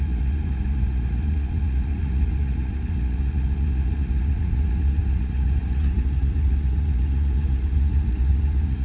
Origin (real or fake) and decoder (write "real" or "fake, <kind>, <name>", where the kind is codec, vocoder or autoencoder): fake, vocoder, Vocos